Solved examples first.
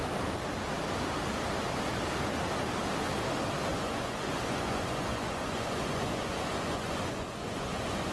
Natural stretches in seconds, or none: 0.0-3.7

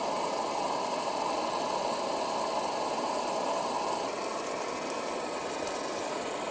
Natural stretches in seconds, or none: 0.0-6.5

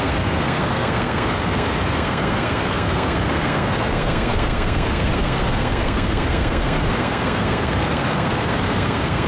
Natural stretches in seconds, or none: none

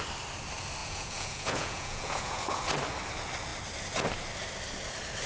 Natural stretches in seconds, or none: 0.0-0.8; 2.6-5.3

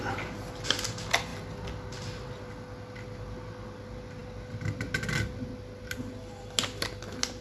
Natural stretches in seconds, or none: 0.0-7.4

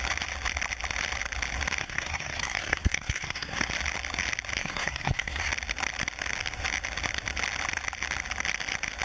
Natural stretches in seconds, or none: 0.0-1.8; 3.7-4.6; 5.5-9.0